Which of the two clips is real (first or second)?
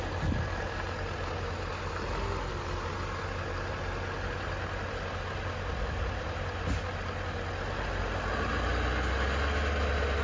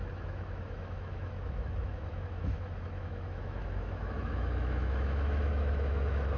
first